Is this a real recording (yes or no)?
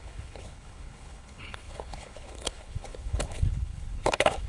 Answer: no